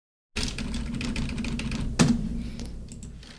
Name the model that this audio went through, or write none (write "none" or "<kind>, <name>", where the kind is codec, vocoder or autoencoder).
none